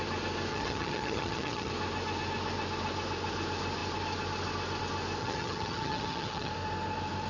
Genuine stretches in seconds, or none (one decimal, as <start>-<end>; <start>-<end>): 0.0-0.5; 1.7-5.2; 6.5-7.3